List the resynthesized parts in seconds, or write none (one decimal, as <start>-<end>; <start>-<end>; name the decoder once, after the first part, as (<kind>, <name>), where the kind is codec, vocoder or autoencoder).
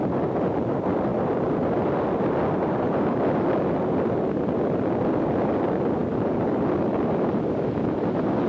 none